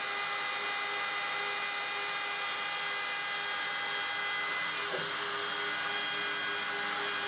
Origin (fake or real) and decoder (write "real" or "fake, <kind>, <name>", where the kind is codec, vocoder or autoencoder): real